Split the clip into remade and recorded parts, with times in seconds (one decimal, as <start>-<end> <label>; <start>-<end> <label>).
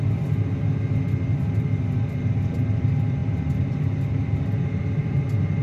0.0-5.6 recorded